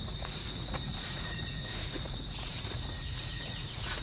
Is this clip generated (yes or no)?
yes